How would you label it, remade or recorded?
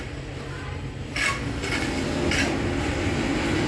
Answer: recorded